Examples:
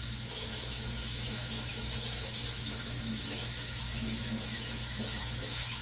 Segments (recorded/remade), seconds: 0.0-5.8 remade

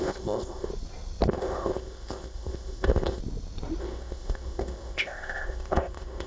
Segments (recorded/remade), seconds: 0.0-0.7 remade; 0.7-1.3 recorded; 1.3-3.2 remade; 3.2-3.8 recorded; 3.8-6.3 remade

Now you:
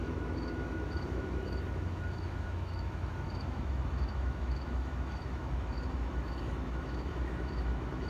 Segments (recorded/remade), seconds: 0.0-8.1 remade

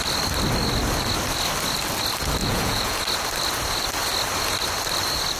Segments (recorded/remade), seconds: 0.0-2.4 recorded; 2.4-3.0 remade; 3.0-5.4 recorded

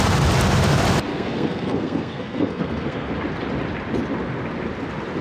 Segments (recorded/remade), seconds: 0.0-1.1 recorded; 1.1-3.1 remade; 3.1-5.2 recorded